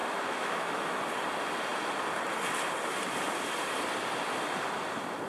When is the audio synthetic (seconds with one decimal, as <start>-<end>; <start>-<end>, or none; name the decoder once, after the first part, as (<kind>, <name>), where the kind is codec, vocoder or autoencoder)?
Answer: 0.0-1.0 (autoencoder, DAC-VAE)